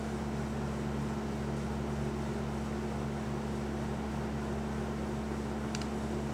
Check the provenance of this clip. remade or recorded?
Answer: recorded